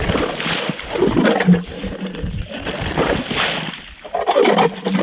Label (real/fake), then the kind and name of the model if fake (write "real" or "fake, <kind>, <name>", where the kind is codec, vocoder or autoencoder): real